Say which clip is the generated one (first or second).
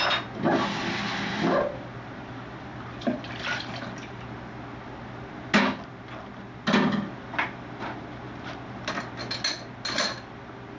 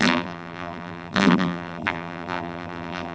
second